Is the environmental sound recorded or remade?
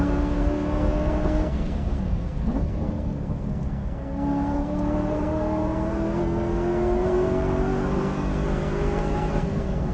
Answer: remade